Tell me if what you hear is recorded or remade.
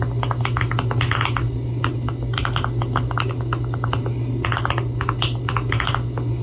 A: recorded